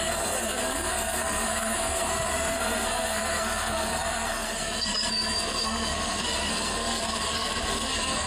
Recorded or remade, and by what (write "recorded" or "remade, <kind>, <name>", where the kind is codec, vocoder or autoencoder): remade, codec, SNAC